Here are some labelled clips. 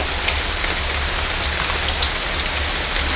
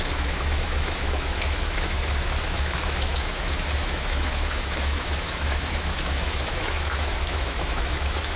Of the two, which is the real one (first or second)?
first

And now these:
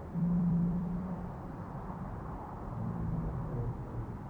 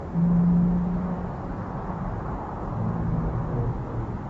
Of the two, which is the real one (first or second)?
second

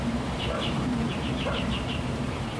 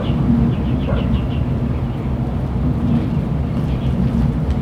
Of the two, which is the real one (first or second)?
second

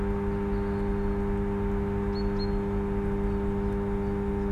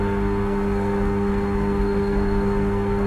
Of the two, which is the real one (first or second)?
first